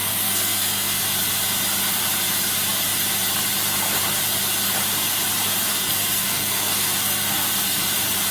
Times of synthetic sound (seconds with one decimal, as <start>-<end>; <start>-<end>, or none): 0.0-1.0; 5.7-7.9